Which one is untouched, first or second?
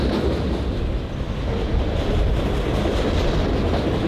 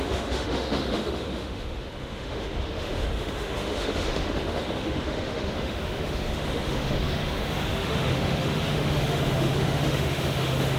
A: first